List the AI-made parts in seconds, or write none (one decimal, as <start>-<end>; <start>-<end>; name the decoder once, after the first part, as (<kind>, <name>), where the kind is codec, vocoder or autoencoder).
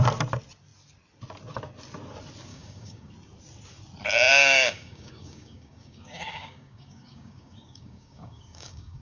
2.5-3.1 (codec, DAC); 4.3-9.0